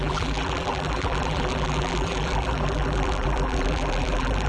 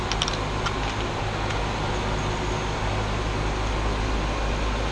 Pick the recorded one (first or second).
second